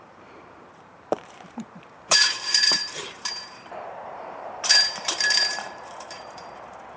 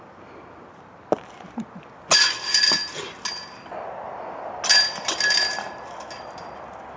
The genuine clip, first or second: second